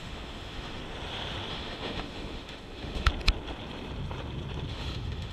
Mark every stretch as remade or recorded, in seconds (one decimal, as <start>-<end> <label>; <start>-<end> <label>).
0.0-0.8 remade; 0.8-1.5 recorded; 1.5-3.1 remade; 3.1-4.7 recorded; 4.7-5.3 remade